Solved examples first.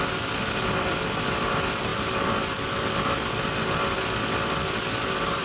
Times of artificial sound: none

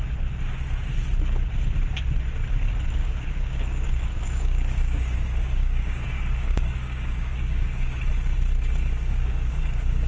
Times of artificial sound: 3.0-8.0; 9.1-10.1

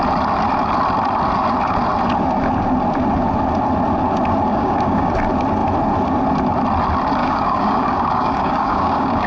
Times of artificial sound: 4.5-5.1; 7.2-9.3

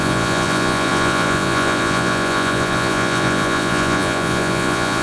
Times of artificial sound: 0.0-5.0

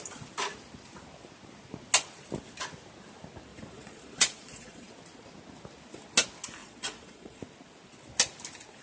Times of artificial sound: 3.5-4.9; 6.6-7.4